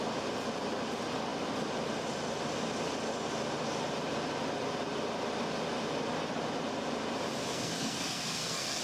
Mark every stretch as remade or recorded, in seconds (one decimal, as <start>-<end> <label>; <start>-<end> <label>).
0.0-7.5 recorded; 7.5-8.8 remade